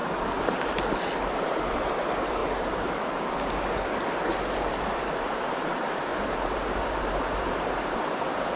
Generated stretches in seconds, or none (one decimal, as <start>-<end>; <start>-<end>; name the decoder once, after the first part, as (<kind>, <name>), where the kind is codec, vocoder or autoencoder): 1.4-2.4 (vocoder, BigVGAN v2); 4.7-8.6